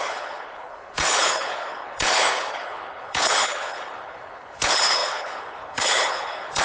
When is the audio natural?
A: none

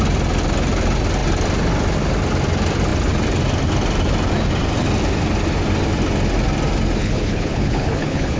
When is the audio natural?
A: 0.0-7.0

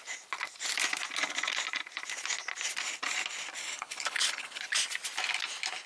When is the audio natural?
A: 0.0-3.6; 4.6-5.9